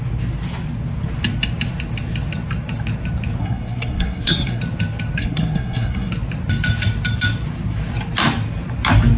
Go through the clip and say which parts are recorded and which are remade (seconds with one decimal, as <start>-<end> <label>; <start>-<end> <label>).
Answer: 0.0-3.4 recorded; 3.4-4.6 remade; 4.6-5.2 recorded; 5.2-6.1 remade; 6.1-9.2 recorded